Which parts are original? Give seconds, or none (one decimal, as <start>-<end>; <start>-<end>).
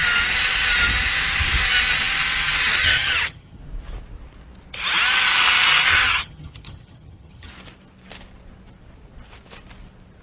0.0-2.8; 3.6-5.9; 7.5-10.2